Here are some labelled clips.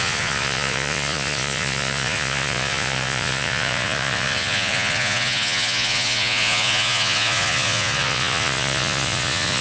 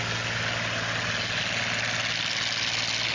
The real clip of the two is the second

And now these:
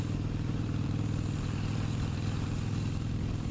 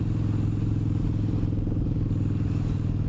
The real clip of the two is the second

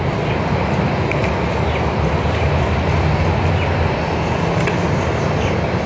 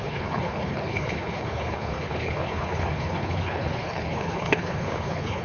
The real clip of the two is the first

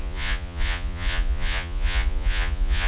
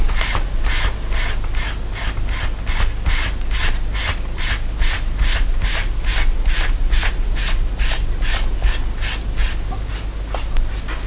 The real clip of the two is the second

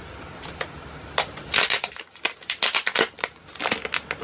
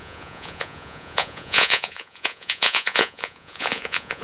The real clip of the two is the first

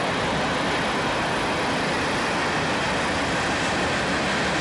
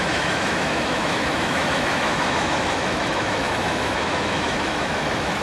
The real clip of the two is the first